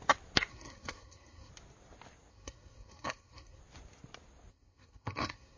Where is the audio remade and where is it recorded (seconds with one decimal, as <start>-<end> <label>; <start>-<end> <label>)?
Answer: 0.0-0.5 recorded; 0.5-1.5 remade; 1.5-2.3 recorded; 2.3-3.6 remade; 3.6-4.5 recorded; 4.5-5.6 remade